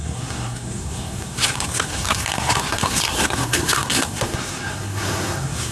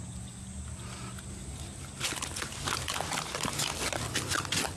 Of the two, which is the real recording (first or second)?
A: second